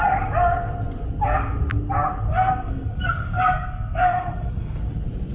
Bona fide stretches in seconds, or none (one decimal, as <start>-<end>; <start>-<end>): 0.0-2.3; 4.8-5.3